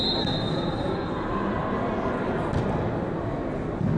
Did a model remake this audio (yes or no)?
no